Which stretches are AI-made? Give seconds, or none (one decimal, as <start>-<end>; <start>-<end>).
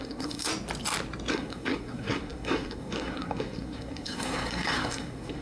0.0-0.5; 1.3-5.4